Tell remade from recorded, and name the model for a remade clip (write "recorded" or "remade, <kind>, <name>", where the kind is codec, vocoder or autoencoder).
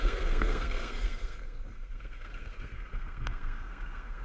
remade, codec, SNAC